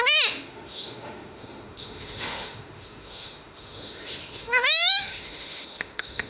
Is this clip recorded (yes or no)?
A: no